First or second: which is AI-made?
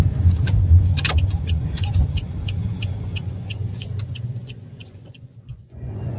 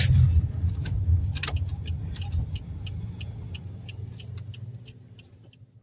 first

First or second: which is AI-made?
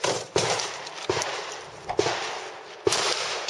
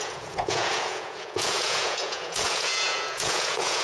second